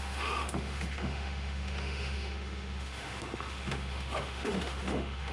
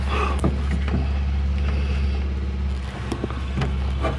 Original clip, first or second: second